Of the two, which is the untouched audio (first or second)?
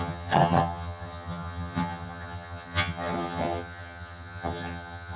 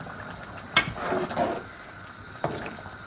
second